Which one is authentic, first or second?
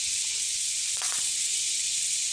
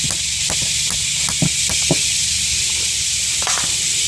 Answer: second